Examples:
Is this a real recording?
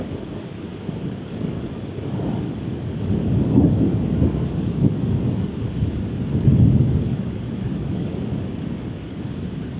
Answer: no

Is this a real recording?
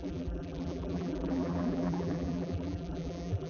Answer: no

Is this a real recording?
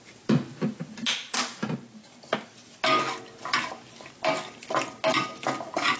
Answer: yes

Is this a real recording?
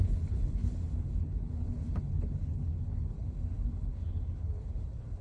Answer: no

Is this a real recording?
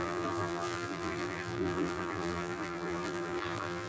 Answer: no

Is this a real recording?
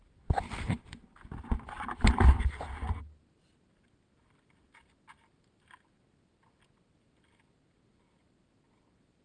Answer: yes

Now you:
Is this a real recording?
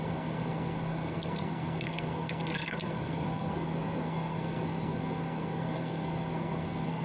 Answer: no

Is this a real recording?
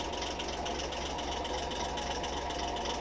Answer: yes